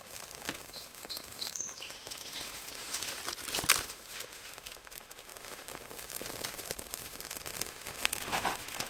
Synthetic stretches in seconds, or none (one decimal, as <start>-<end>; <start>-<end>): 0.0-3.2; 3.8-8.9